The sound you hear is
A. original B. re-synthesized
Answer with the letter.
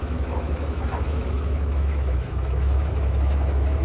B